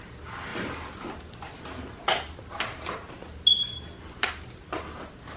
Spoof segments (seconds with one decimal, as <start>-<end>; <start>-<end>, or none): 0.5-1.1